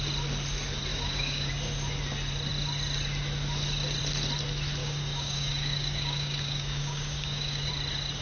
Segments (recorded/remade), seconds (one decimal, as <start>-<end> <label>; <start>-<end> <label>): 0.0-0.9 recorded; 0.9-1.5 remade; 1.5-4.8 recorded; 4.8-7.7 remade; 7.7-8.2 recorded